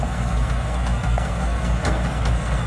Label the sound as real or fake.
fake